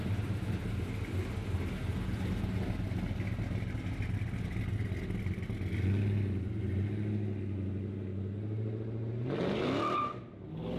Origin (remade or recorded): recorded